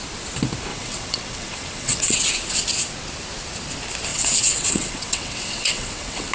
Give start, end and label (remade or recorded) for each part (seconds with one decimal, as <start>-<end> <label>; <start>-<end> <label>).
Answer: 0.0-0.7 recorded; 0.7-2.2 remade; 2.2-4.1 recorded; 4.1-6.3 remade